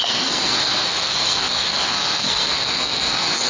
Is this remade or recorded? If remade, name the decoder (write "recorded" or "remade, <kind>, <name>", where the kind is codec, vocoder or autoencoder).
remade, codec, SNAC